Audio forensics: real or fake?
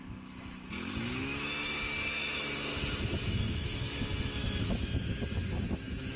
fake